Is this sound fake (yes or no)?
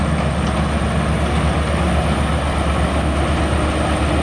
no